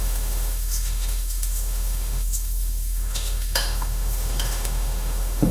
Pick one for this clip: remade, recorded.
remade